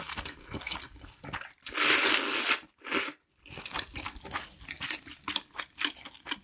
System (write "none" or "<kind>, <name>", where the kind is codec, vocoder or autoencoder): none